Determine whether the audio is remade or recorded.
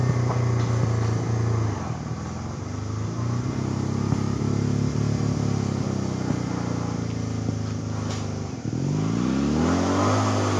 recorded